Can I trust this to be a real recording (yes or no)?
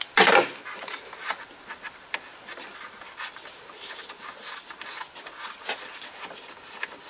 yes